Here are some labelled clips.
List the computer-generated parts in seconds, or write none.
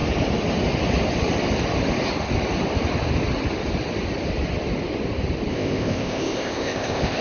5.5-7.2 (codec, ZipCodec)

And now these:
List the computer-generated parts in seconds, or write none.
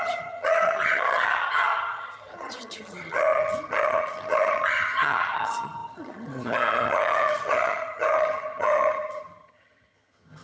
0.0-10.4 (vocoder, HiFi-GAN)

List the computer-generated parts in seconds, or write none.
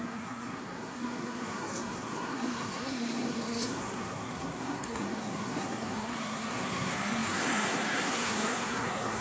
0.0-9.2 (codec, SNAC)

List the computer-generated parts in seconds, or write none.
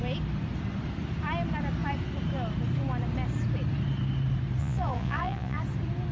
4.6-5.6 (vocoder, Vocos)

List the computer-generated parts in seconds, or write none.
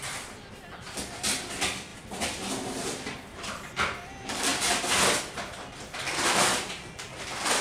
none